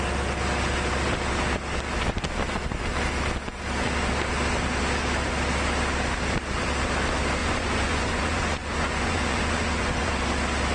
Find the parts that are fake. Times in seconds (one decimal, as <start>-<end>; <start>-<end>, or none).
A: 7.4-10.1